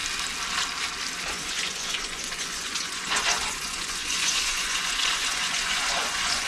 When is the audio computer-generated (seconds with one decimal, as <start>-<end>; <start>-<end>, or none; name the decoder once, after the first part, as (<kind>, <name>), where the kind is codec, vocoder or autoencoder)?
1.3-6.5 (vocoder, Vocos)